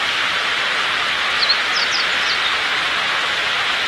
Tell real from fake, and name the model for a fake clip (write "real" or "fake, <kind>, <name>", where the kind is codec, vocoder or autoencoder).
real